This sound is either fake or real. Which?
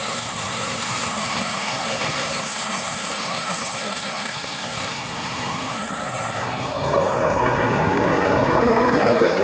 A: fake